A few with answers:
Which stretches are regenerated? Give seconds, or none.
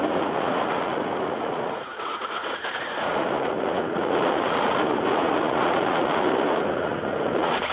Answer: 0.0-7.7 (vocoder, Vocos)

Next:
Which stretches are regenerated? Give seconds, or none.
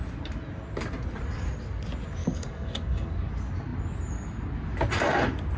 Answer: 2.2-3.3 (codec, DAC)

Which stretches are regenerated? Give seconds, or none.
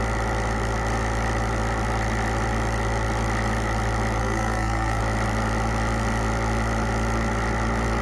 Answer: 4.2-5.0 (codec, SNAC)